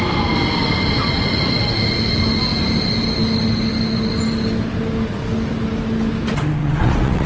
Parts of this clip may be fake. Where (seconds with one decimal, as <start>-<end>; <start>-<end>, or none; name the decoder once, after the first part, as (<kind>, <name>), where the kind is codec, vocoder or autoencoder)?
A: 6.6-7.3 (vocoder, WaveNeXt)

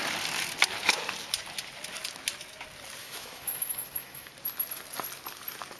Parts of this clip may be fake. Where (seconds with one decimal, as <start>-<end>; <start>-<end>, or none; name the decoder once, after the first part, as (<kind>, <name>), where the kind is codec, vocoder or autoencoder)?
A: 3.0-4.3 (autoencoder, DAC-VAE)

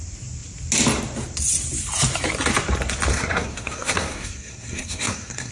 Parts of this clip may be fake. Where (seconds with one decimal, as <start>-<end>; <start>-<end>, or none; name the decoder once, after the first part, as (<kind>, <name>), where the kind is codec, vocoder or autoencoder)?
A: 3.1-5.5 (codec, SNAC)